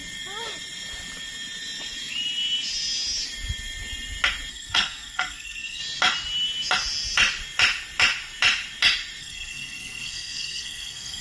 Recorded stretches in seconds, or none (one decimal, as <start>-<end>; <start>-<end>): 0.0-4.5; 5.8-9.2